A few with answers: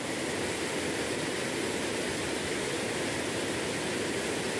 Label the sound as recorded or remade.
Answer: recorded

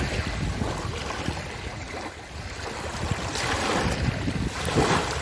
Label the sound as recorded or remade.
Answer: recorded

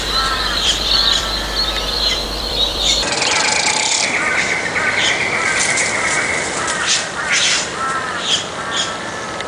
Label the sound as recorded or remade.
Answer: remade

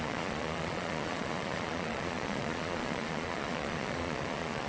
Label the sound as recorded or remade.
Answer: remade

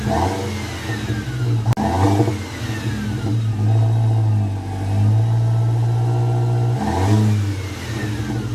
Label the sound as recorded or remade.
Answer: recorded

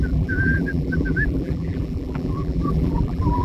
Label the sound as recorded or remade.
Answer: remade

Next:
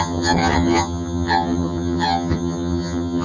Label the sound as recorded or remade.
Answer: remade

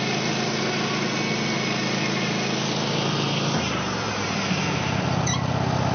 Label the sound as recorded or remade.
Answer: recorded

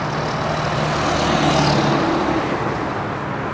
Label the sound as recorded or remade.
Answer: recorded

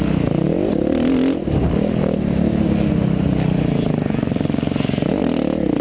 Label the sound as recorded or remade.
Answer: recorded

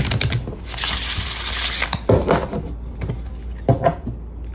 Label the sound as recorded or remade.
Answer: recorded